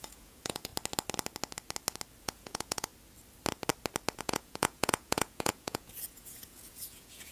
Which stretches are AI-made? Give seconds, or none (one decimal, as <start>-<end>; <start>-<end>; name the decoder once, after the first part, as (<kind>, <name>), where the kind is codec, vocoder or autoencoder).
0.0-0.7 (vocoder, Vocos); 2.2-2.9; 4.2-7.3